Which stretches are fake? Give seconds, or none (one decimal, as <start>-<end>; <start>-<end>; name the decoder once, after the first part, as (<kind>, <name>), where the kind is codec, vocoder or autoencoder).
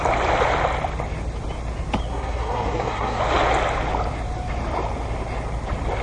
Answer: 2.1-3.2 (codec, SNAC)